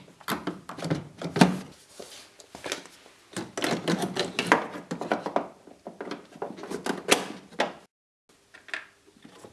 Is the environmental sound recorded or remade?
recorded